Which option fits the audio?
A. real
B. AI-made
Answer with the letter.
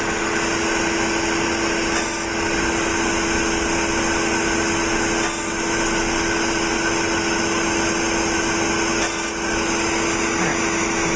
A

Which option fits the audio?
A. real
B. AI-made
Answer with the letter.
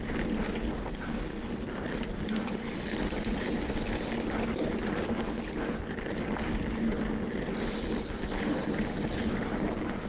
A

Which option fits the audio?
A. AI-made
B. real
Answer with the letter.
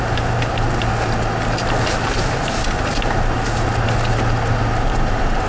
B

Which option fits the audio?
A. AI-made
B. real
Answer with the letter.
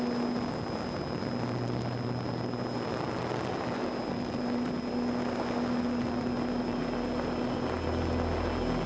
B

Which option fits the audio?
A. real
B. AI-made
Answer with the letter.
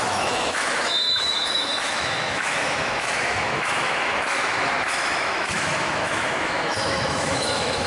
B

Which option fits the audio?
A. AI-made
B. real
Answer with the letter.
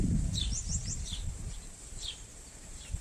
A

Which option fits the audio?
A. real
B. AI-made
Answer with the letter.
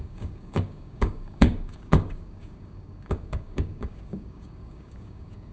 B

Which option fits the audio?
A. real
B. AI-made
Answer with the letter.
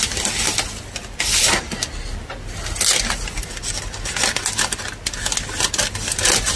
A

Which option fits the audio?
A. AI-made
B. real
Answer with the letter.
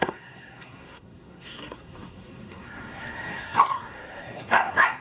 A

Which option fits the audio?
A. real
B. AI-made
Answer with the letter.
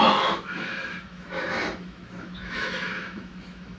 B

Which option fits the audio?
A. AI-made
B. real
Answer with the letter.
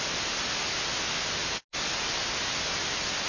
B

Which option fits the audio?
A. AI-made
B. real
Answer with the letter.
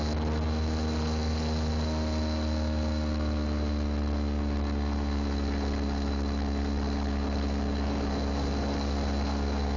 B